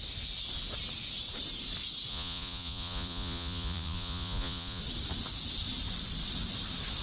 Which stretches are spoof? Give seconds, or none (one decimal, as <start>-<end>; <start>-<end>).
2.1-4.8